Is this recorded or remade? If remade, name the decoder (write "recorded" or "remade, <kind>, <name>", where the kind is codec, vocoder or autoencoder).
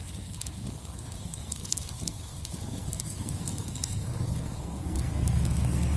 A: remade, codec, SNAC